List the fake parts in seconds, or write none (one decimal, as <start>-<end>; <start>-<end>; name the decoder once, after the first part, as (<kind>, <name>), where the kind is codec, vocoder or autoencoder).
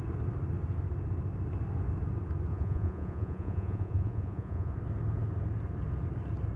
2.5-4.7 (vocoder, Vocos)